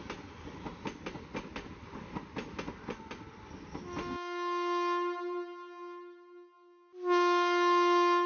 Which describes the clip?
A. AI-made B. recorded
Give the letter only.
B